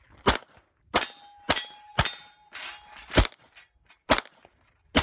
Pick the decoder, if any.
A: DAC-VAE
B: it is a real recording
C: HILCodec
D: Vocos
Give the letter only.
B